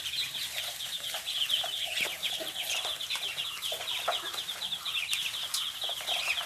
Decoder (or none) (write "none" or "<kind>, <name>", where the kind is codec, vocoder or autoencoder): none